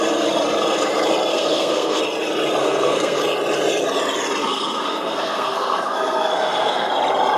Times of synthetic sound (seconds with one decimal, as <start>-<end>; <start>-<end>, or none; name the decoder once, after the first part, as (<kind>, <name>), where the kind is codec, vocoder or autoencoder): 1.3-2.0 (codec, SNAC); 2.6-3.2; 4.4-6.9